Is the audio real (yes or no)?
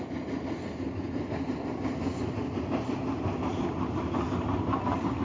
yes